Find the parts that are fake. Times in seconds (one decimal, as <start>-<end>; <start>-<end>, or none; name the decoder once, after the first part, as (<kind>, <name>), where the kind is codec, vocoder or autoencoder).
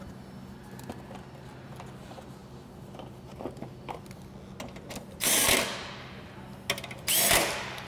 none